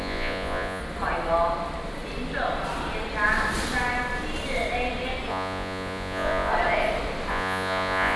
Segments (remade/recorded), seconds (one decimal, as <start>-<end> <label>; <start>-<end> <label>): 0.0-0.8 remade; 0.8-5.3 recorded; 5.3-6.5 remade; 6.5-7.3 recorded; 7.3-8.2 remade